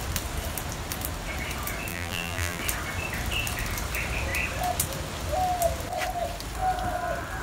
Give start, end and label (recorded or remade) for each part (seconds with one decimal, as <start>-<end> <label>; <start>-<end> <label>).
0.0-1.9 recorded; 1.9-2.6 remade; 2.6-7.4 recorded